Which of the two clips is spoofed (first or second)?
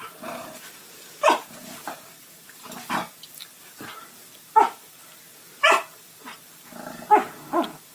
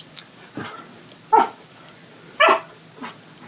first